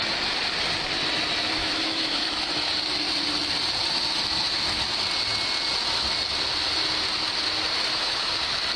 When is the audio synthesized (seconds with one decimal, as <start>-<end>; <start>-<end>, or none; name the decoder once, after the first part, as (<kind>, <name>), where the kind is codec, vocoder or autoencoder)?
1.6-2.4 (autoencoder, DAC-VAE); 7.9-8.4